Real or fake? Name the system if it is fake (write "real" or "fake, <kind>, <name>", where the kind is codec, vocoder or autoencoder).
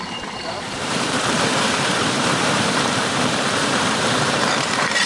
fake, vocoder, BigVGAN v2